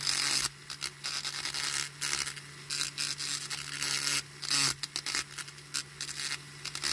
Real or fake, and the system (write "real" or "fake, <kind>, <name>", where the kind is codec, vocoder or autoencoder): real